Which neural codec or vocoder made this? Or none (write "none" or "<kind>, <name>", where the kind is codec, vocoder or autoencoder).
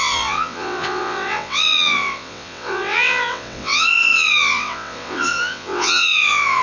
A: vocoder, WaveNeXt